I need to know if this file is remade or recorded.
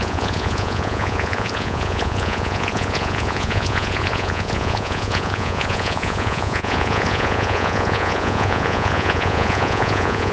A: remade